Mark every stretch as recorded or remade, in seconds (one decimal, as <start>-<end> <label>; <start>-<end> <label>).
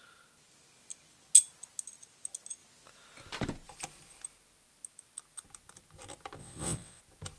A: 0.0-6.4 recorded; 6.4-7.0 remade; 7.0-7.4 recorded